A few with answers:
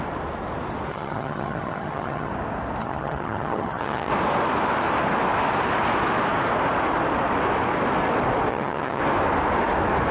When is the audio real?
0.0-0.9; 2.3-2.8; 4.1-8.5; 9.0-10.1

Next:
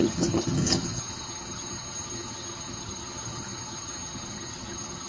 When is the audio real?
none

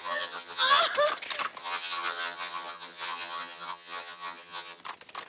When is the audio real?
0.8-1.6; 4.8-5.3

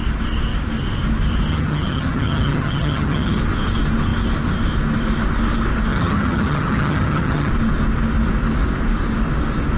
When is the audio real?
0.0-1.5; 3.4-5.9; 7.5-9.8

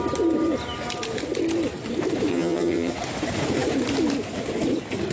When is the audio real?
0.0-2.3; 2.9-5.1

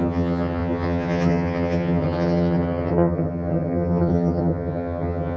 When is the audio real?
none

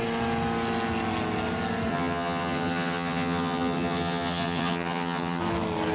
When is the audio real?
0.0-1.9; 5.4-5.9

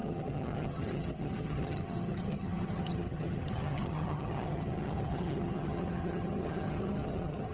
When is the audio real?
none